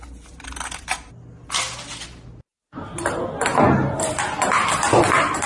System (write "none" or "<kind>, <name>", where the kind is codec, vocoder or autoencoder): none